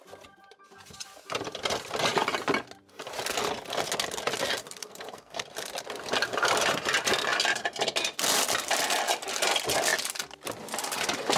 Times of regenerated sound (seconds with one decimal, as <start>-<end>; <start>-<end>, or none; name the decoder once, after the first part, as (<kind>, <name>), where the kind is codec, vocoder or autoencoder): 4.6-5.4 (codec, SNAC)